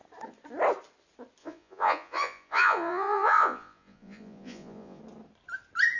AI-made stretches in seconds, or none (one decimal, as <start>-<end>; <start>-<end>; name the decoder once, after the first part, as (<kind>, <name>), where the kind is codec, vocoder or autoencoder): 1.4-5.0 (vocoder, Vocos)